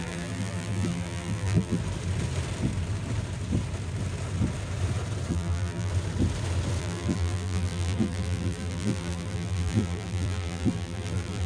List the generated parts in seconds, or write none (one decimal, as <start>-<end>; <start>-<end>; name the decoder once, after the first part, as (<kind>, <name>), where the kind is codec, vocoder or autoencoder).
0.0-1.8 (vocoder, BigVGAN v2); 5.3-5.9; 6.8-11.5